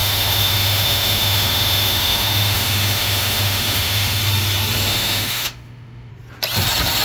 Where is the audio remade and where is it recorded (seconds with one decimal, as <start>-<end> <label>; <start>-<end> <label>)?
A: 0.0-4.2 remade; 4.2-4.9 recorded; 4.9-6.1 remade; 6.1-7.0 recorded